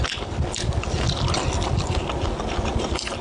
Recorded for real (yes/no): yes